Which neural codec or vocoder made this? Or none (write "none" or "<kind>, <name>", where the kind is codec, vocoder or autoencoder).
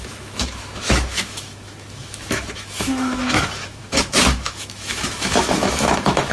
autoencoder, DAC-VAE